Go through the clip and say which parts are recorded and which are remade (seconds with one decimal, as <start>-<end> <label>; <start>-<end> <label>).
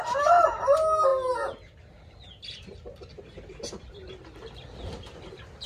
0.0-5.7 recorded